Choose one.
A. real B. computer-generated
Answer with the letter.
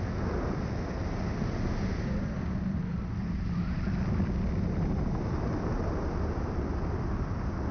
A